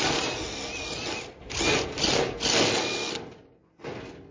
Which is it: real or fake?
real